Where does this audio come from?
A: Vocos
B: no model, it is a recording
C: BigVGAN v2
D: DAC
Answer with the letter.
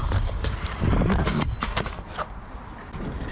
C